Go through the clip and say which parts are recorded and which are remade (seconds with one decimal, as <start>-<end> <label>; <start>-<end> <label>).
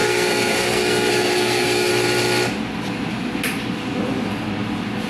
0.0-1.9 remade; 1.9-5.1 recorded